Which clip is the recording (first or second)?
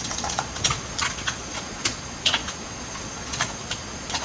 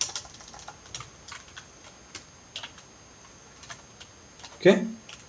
second